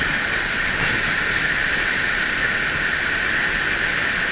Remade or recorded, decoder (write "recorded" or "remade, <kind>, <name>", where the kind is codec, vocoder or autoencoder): recorded